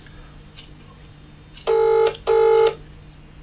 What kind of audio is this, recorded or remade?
recorded